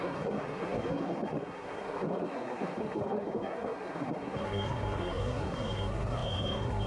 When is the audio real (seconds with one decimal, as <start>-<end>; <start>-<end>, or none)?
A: none